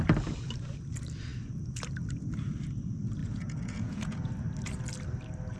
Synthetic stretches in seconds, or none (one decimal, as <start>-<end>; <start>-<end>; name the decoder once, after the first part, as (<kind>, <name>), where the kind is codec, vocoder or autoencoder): 3.2-4.3 (vocoder, Vocos)